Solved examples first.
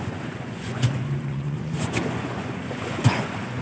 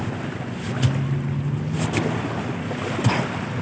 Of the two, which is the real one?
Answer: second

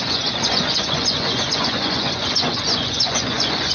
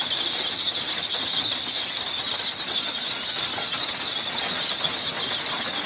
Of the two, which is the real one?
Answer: second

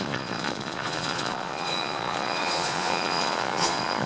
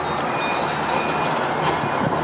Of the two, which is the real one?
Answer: second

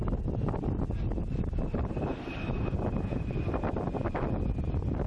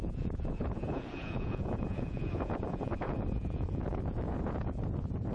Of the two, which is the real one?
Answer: first